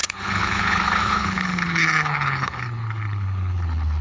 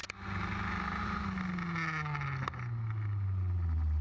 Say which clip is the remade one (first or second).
first